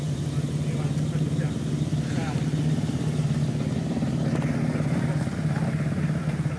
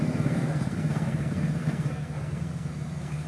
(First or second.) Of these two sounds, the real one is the first